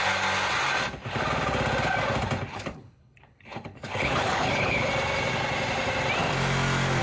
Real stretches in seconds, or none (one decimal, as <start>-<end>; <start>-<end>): 0.0-2.5; 4.9-7.0